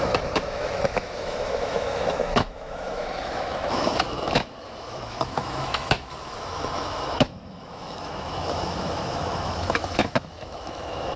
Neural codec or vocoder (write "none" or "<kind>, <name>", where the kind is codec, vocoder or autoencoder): autoencoder, DAC-VAE